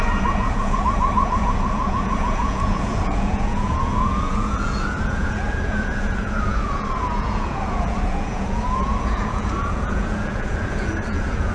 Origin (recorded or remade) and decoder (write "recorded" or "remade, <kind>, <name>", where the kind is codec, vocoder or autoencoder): remade, vocoder, Vocos